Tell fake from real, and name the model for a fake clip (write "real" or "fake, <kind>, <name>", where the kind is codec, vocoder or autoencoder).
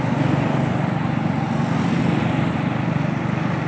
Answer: fake, vocoder, BigVGAN v2